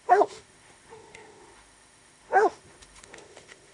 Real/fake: fake